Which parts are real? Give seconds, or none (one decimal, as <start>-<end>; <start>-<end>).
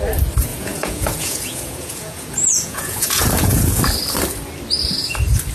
0.0-0.5; 3.8-5.5